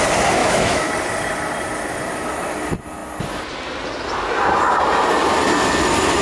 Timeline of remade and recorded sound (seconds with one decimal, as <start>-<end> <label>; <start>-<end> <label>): 0.0-0.4 recorded; 0.4-0.9 remade; 0.9-6.2 recorded